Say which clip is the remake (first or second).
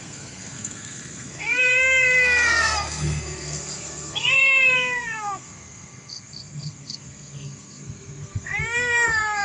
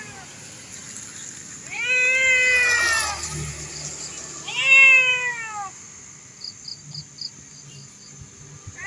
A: first